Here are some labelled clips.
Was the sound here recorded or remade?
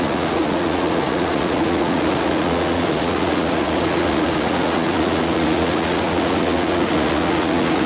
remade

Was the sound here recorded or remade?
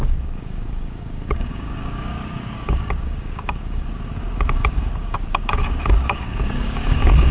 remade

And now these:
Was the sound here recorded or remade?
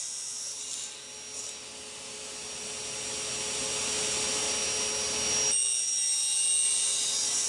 recorded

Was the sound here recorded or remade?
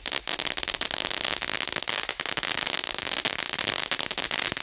recorded